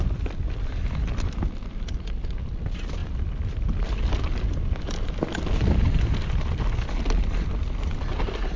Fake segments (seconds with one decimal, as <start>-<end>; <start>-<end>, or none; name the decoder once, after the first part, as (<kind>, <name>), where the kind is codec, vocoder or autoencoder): none